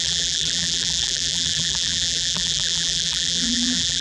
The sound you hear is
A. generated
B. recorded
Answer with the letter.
A